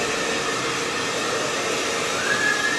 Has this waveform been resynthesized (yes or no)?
no